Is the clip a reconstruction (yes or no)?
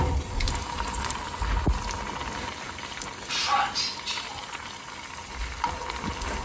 no